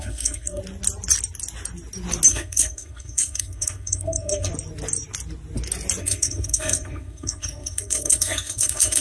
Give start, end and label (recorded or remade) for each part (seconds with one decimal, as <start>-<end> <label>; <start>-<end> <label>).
0.0-0.6 remade; 0.6-2.3 recorded; 2.3-4.5 remade; 4.5-6.0 recorded; 6.0-9.0 remade